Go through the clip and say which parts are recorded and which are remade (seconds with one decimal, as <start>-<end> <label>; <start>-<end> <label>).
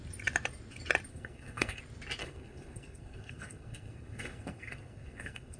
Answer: 0.0-1.1 recorded; 1.1-1.8 remade; 1.8-2.2 recorded; 2.2-5.6 remade